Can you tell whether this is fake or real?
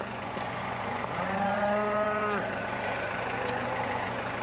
fake